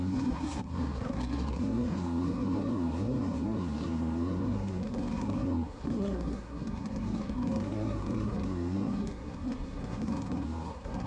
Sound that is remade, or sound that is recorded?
remade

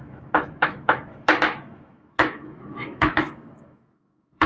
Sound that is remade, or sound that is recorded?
remade